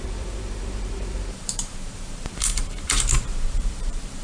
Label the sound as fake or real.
fake